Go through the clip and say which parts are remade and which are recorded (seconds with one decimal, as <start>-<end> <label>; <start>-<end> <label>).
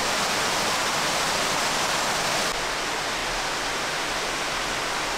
0.0-5.2 recorded